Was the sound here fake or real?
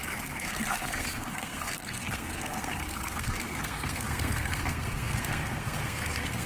fake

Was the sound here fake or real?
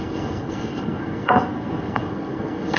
fake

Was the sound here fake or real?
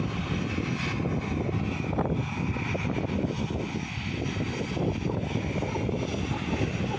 real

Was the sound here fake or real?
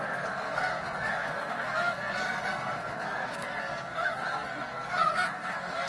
fake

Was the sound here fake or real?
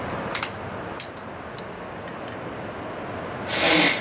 real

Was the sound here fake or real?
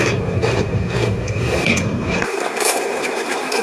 fake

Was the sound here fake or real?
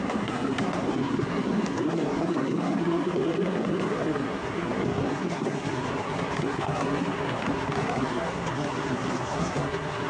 fake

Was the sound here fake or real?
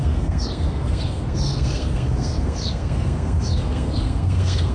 fake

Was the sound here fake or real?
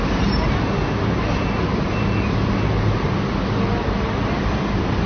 real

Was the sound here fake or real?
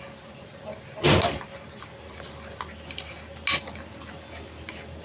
real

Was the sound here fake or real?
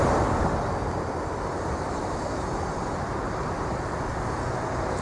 real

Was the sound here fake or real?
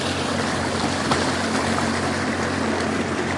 real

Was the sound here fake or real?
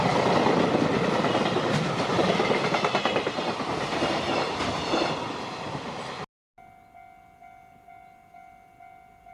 real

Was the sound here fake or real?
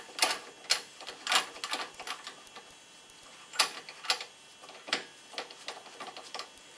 real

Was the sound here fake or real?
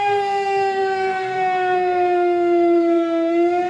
fake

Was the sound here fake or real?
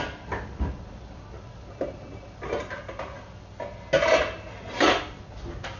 real